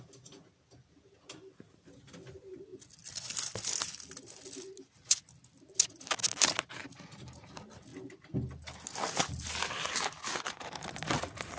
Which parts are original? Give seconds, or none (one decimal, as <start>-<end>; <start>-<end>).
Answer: 0.0-11.6